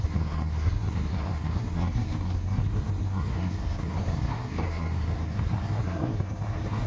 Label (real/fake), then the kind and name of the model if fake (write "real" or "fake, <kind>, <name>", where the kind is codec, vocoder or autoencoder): fake, codec, SNAC